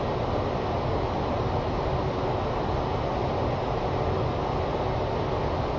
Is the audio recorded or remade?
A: recorded